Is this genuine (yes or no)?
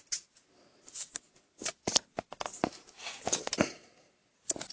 yes